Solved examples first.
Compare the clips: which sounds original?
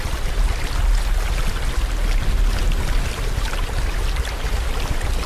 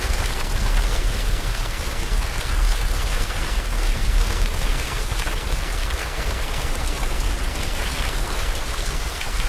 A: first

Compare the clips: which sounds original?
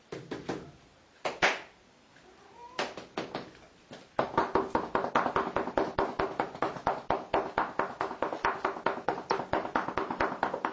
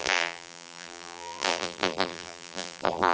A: first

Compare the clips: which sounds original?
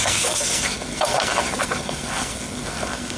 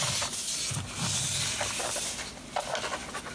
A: second